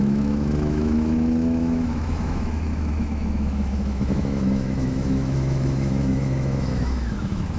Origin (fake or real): fake